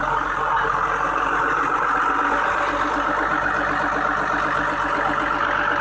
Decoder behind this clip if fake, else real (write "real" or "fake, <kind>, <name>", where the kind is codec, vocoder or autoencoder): real